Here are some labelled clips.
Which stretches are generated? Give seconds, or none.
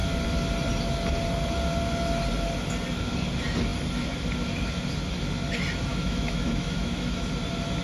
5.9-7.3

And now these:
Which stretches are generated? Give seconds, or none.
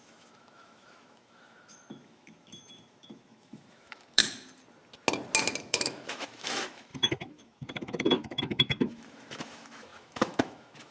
0.0-4.2; 5.6-10.9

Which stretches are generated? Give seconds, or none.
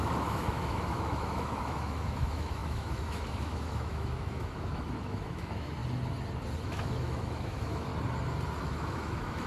0.0-5.8; 6.6-7.9; 8.6-9.5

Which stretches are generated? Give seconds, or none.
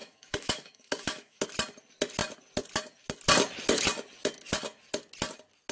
0.0-1.4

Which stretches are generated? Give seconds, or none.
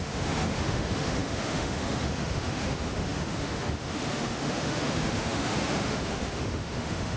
0.0-7.2